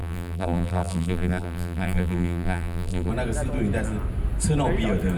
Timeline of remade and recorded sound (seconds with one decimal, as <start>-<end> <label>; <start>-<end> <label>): 0.0-3.1 remade; 3.1-5.2 recorded